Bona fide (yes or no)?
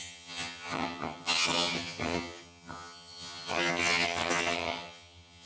no